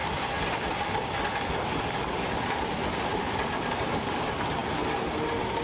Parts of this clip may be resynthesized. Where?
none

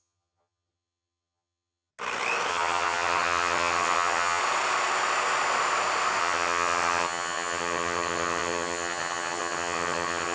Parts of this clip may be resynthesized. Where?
0.0-1.9 (vocoder, HiFi-GAN); 2.5-4.4; 6.2-10.3

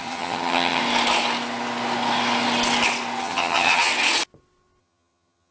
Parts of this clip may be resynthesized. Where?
0.0-0.8 (vocoder, HiFi-GAN); 3.2-3.9; 4.8-5.5

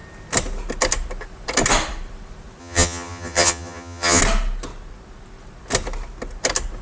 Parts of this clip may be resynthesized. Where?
2.6-4.2 (vocoder, HiFi-GAN)

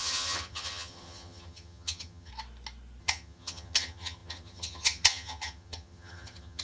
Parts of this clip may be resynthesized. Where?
0.0-2.3 (vocoder, HiFi-GAN); 3.0-6.6

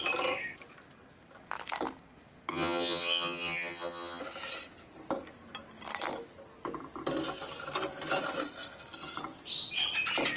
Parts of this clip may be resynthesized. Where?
2.5-4.2 (vocoder, HiFi-GAN)